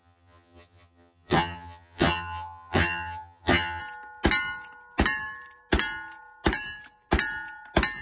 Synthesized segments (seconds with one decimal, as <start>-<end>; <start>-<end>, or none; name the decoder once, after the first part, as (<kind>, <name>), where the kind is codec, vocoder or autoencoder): 0.0-3.8 (vocoder, HiFi-GAN)